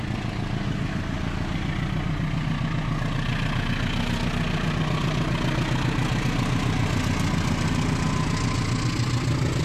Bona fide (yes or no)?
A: yes